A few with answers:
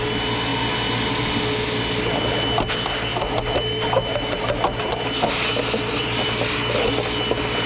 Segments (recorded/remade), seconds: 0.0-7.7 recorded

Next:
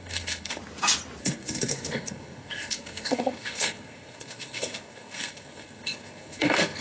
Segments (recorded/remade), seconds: 0.0-0.6 remade; 0.6-1.2 recorded; 1.2-6.8 remade

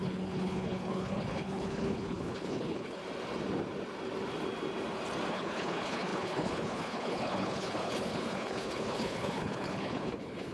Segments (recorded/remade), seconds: 0.0-3.0 remade; 3.0-5.3 recorded; 5.3-10.5 remade

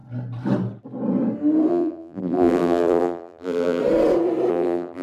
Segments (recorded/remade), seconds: 0.0-1.7 recorded; 1.7-3.8 remade; 3.8-4.5 recorded; 4.5-5.0 remade

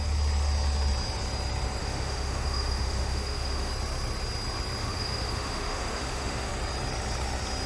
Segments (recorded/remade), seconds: 0.0-1.8 recorded; 1.8-3.7 remade; 3.7-4.8 recorded; 4.8-6.5 remade; 6.5-7.7 recorded